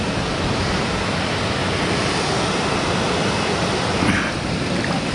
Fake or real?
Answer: real